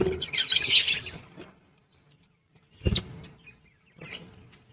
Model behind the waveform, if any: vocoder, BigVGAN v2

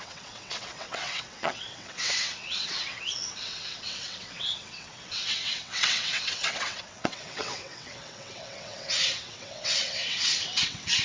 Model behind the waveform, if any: vocoder, WaveNeXt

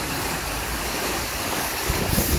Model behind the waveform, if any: codec, DAC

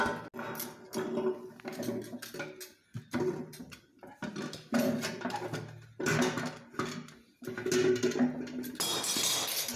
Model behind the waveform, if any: none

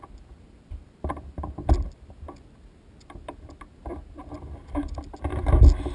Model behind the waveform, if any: none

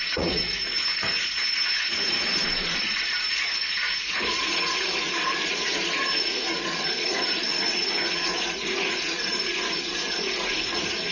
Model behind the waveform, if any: vocoder, Vocos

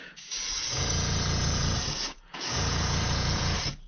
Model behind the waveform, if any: vocoder, Vocos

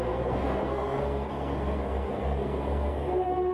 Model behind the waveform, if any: codec, SNAC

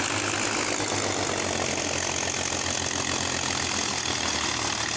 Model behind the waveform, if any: none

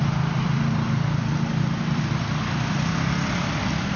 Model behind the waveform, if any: vocoder, BigVGAN v2